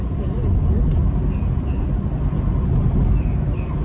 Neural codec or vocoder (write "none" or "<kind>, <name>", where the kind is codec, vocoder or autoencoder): none